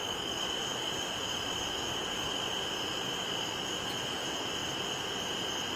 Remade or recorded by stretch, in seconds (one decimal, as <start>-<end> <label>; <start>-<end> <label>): 0.0-4.6 recorded; 4.6-5.1 remade; 5.1-5.8 recorded